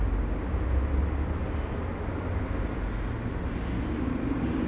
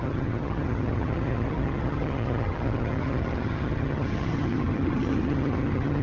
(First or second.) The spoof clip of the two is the second